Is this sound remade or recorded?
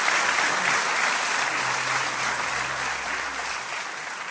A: recorded